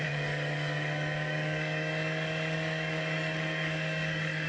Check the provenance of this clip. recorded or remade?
remade